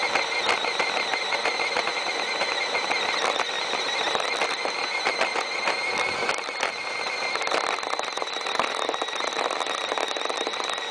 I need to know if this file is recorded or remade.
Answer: recorded